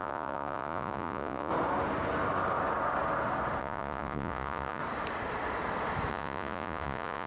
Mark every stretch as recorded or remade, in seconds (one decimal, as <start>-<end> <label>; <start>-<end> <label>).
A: 0.0-1.5 remade; 1.5-3.6 recorded; 3.6-4.8 remade; 4.8-6.1 recorded; 6.1-7.3 remade